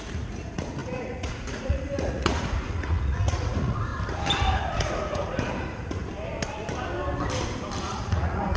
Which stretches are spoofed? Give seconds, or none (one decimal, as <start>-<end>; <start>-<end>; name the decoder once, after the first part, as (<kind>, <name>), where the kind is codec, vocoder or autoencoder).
0.0-3.9 (vocoder, Vocos); 4.6-6.0; 7.8-8.6